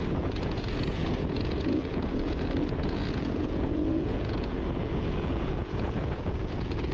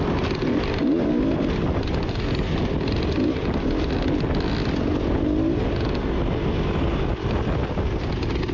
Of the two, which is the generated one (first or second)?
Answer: first